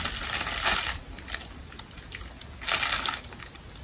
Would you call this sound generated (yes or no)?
no